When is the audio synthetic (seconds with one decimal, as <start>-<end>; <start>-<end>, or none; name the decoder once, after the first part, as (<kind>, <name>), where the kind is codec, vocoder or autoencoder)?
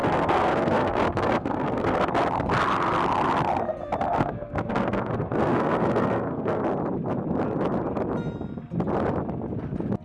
0.0-2.1 (codec, SNAC); 4.1-6.6